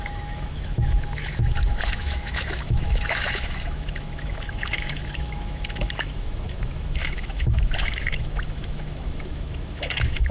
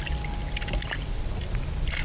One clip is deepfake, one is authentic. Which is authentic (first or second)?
second